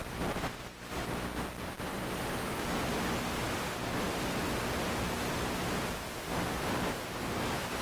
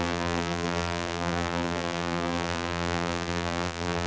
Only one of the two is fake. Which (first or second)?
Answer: second